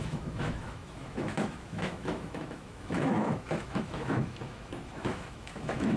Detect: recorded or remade remade